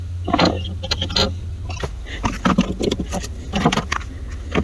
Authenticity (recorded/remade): recorded